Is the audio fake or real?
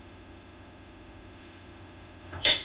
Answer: fake